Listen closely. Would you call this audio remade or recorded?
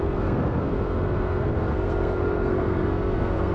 remade